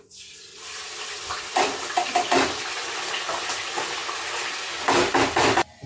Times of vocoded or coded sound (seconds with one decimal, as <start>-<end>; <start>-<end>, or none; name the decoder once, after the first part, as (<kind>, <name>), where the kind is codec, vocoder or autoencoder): 0.5-3.5 (vocoder, BigVGAN v2)